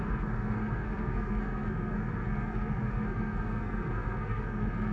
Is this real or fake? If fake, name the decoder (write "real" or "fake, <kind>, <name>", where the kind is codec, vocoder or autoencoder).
fake, codec, SNAC